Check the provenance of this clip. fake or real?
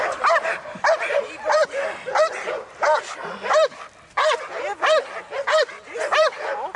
real